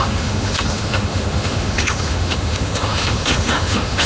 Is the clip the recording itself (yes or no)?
no